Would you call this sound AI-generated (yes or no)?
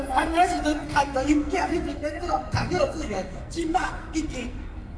yes